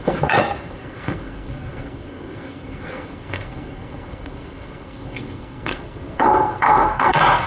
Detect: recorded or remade remade